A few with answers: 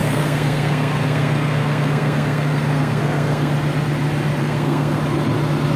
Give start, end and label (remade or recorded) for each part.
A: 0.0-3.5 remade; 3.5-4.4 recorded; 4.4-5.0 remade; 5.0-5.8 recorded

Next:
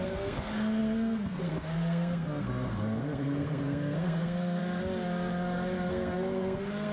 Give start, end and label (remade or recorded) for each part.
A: 0.0-4.6 remade; 4.6-5.9 recorded; 5.9-6.9 remade

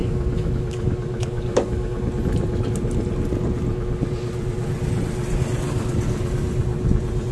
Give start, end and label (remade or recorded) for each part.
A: 0.0-2.1 remade; 2.1-7.3 recorded

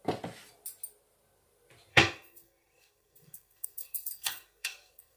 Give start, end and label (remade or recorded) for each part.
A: 0.0-1.9 recorded; 1.9-5.2 remade

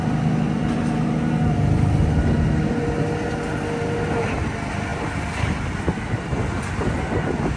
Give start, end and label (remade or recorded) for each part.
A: 0.0-7.6 recorded